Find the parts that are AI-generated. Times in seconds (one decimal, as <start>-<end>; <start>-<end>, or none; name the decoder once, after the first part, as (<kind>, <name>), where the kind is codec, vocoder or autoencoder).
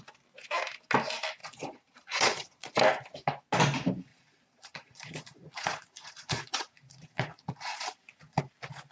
1.4-2.7 (vocoder, Vocos); 4.1-8.4